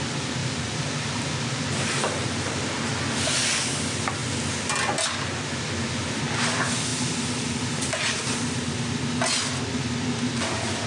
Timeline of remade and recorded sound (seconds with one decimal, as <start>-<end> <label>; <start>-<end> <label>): 0.0-0.4 recorded; 0.4-2.8 remade; 2.8-6.9 recorded; 6.9-8.4 remade; 8.4-10.9 recorded